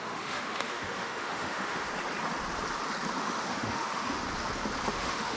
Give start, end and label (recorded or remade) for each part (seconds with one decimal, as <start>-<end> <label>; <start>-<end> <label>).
0.0-1.9 remade; 1.9-3.2 recorded; 3.2-4.2 remade; 4.2-4.9 recorded; 4.9-5.4 remade